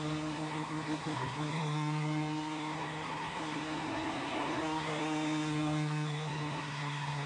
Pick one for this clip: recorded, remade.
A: remade